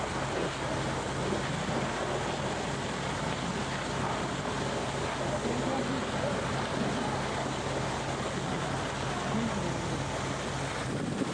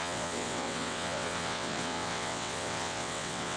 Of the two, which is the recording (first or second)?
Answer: first